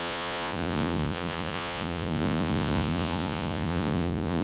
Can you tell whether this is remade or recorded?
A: remade